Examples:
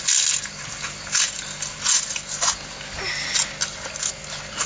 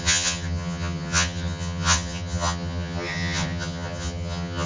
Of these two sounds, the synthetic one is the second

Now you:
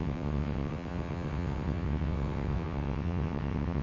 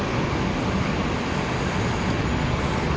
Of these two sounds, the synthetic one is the first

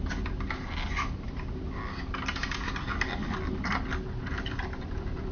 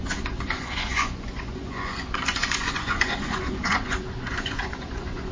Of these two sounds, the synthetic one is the second